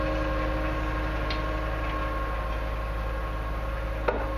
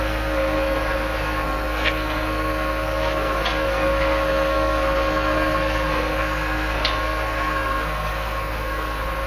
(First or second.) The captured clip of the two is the first